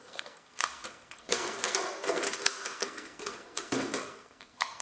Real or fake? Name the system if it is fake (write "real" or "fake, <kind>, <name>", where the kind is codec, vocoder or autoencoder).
fake, codec, SNAC